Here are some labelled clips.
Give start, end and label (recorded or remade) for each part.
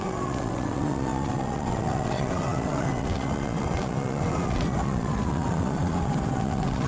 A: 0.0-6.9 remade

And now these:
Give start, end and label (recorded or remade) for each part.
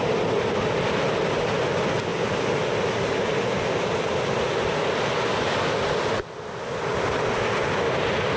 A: 0.0-8.4 recorded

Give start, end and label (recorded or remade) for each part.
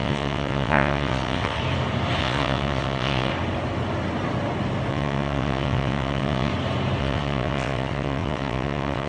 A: 0.0-1.6 remade; 1.6-2.2 recorded; 2.2-3.3 remade; 3.3-4.9 recorded; 4.9-6.5 remade; 6.5-7.0 recorded; 7.0-9.1 remade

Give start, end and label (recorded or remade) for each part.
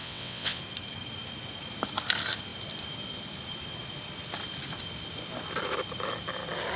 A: 0.0-0.6 remade; 0.6-6.8 recorded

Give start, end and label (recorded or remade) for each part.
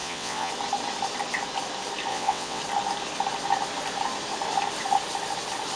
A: 0.0-0.5 remade; 0.5-2.1 recorded; 2.1-2.6 remade; 2.6-5.8 recorded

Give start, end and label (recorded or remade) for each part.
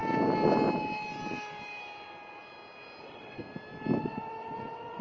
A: 0.0-3.0 recorded; 3.0-3.4 remade; 3.4-4.0 recorded; 4.0-5.0 remade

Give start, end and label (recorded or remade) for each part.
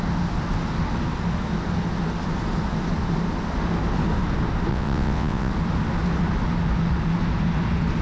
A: 0.0-4.7 recorded; 4.7-5.5 remade; 5.5-8.0 recorded